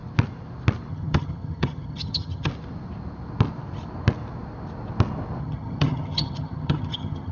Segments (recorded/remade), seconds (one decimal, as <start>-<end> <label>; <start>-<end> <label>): 0.0-0.9 recorded; 0.9-2.5 remade; 2.5-5.4 recorded; 5.4-7.3 remade